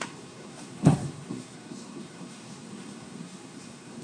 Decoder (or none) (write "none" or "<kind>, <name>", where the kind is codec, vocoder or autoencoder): codec, SNAC